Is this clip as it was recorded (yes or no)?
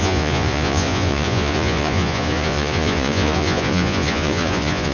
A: no